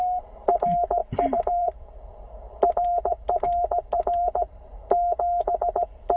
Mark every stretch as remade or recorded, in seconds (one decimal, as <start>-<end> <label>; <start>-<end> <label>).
0.0-1.0 recorded; 1.0-4.7 remade; 4.7-6.2 recorded

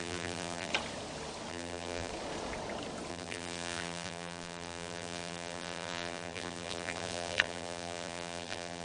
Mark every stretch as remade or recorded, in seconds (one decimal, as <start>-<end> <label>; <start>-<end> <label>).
0.0-0.7 remade; 0.7-1.5 recorded; 1.5-2.1 remade; 2.1-3.1 recorded; 3.1-8.8 remade

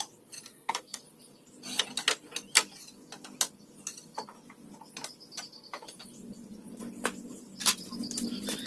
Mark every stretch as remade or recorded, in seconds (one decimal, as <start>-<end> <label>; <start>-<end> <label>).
0.0-0.5 recorded; 0.5-1.0 remade; 1.0-8.7 recorded